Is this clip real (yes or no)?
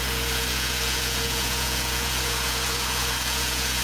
no